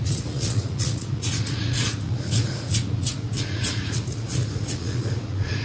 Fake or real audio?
fake